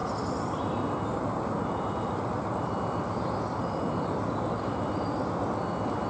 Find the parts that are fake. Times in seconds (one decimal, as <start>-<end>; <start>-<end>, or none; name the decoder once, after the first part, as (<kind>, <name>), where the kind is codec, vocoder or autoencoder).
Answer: none